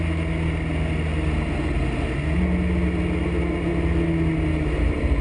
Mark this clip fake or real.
real